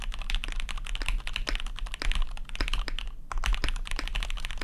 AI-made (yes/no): no